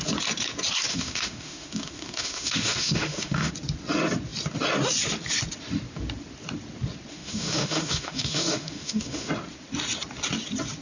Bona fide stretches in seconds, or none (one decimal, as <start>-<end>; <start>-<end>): 0.0-0.9; 3.5-7.1; 9.3-10.8